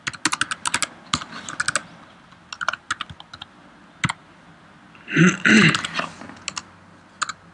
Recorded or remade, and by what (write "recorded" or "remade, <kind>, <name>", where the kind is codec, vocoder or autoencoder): recorded